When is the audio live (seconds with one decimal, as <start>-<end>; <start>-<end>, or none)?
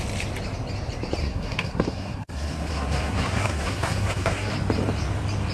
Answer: 0.0-1.2; 4.5-5.5